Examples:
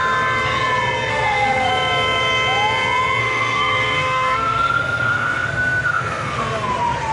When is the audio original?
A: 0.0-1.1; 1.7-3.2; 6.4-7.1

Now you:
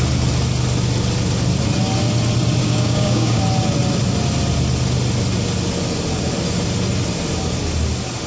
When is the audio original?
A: 0.0-2.6; 3.4-8.3

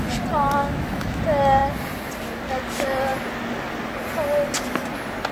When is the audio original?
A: 0.0-0.6; 1.2-5.3

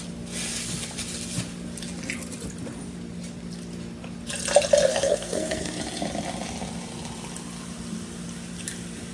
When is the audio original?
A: 0.0-4.9; 5.8-9.1